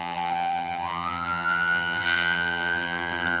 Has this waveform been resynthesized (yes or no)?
yes